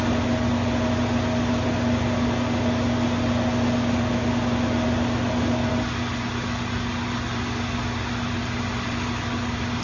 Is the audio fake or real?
real